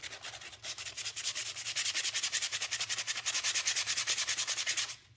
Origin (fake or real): real